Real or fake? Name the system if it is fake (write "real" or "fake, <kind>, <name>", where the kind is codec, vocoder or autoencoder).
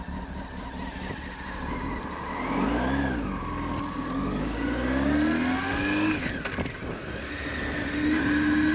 real